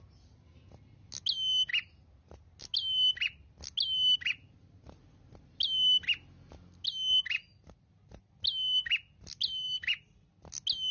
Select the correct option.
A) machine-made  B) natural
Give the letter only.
B